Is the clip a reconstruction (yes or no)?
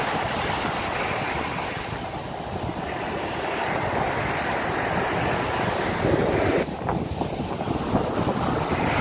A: no